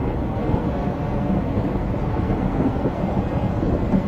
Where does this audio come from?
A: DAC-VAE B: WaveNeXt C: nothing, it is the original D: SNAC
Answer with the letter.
D